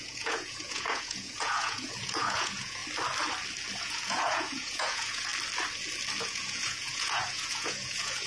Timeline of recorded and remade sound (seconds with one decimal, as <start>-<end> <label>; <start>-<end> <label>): 0.0-2.8 remade; 2.8-3.8 recorded; 3.8-5.3 remade; 5.3-6.2 recorded; 6.2-8.3 remade